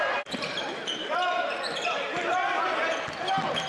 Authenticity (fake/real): real